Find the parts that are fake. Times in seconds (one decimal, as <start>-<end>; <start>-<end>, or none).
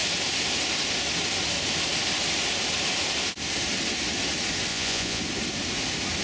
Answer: 4.7-5.2